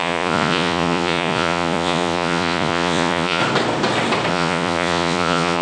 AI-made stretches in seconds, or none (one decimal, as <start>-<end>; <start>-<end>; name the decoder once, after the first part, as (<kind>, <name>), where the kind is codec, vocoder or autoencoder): 0.0-3.4 (vocoder, Vocos); 4.3-5.6